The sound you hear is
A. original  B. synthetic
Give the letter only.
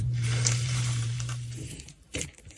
B